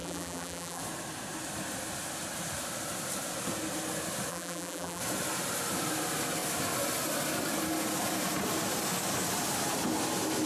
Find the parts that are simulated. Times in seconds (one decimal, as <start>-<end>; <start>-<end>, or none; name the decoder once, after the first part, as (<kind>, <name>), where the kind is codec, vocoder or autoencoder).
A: 0.0-0.8 (vocoder, BigVGAN v2); 4.3-5.0